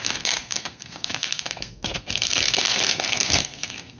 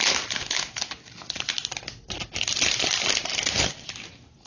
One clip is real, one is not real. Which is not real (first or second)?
first